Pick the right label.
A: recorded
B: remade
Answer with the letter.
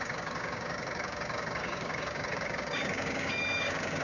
B